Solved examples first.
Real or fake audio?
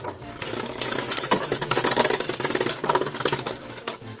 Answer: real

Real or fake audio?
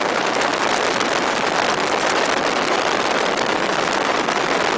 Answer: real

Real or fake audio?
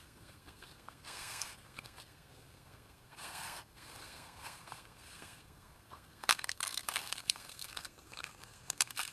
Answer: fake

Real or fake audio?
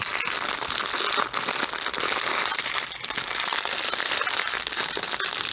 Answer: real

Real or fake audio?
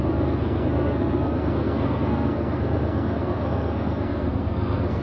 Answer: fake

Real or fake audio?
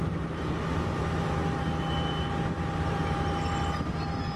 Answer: real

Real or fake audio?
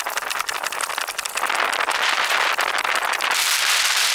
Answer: real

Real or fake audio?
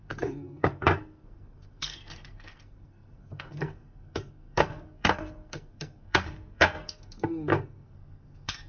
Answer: fake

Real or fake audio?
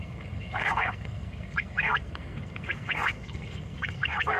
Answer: fake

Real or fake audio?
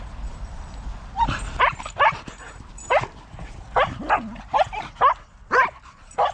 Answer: real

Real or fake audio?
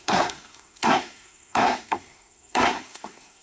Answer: fake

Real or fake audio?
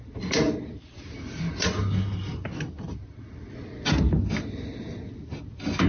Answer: real